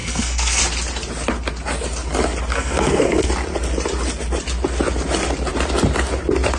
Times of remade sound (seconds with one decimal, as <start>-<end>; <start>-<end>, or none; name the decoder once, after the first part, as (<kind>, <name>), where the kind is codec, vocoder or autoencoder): 0.0-0.6 (codec, SNAC); 2.5-3.3